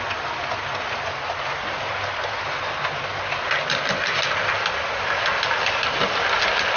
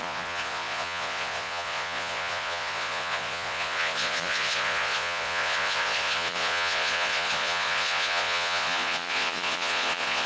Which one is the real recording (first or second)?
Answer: first